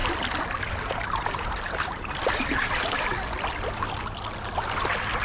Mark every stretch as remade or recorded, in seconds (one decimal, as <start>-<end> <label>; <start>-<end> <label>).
0.0-0.7 recorded; 0.7-2.2 remade; 2.2-5.2 recorded